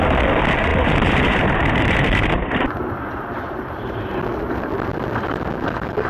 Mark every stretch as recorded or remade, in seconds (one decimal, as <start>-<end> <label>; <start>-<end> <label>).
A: 0.0-0.7 recorded; 0.7-4.2 remade; 4.2-6.1 recorded